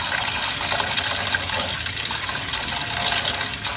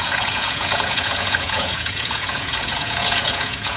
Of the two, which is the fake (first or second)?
second